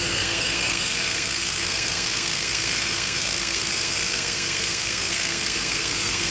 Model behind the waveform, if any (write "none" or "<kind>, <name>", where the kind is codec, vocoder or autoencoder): codec, SNAC